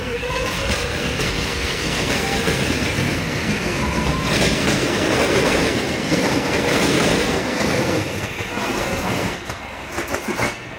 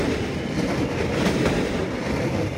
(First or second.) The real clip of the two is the second